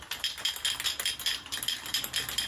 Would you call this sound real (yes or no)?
no